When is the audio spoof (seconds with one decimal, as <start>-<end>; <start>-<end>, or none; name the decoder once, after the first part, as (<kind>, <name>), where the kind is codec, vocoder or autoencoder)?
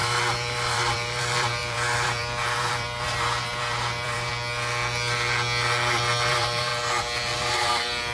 0.0-4.3 (vocoder, BigVGAN v2); 6.3-6.7; 7.4-8.1